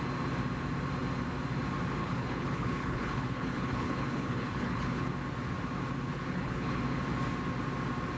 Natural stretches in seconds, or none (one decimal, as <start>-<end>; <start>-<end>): 0.0-2.0; 5.1-6.1; 6.8-8.2